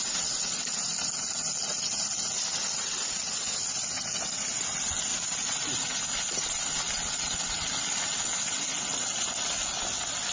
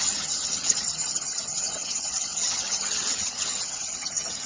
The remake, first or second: second